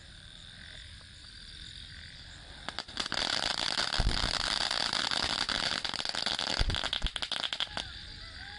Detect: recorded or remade recorded